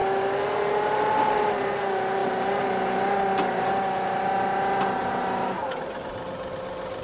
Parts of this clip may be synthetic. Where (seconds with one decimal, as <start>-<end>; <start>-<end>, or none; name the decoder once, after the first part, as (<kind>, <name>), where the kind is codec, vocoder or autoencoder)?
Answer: none